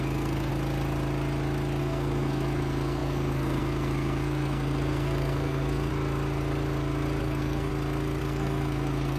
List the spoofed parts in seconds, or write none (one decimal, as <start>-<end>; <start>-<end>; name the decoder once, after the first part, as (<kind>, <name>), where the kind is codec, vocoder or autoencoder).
0.0-0.5 (codec, SNAC); 1.8-5.9; 7.2-7.7; 8.2-9.2